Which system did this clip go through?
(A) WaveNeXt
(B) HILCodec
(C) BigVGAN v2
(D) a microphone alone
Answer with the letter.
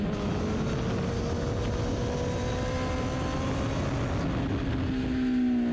D